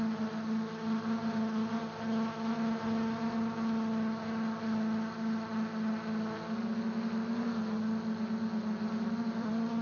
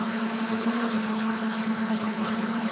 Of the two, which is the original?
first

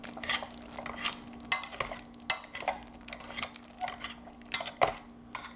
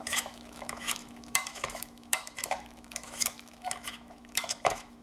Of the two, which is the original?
first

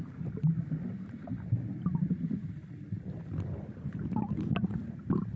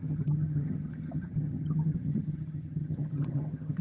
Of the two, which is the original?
first